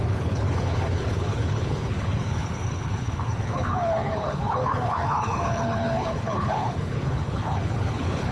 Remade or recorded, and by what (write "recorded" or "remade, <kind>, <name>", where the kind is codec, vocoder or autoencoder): remade, codec, HILCodec